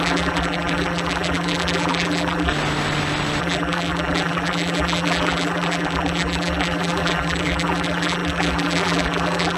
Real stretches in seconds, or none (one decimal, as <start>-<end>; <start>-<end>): 2.5-3.4